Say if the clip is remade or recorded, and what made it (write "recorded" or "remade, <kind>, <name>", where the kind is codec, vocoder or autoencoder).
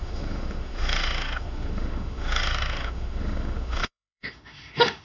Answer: remade, autoencoder, DAC-VAE